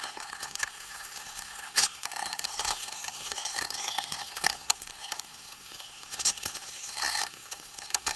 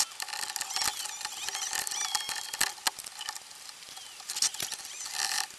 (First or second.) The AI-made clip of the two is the first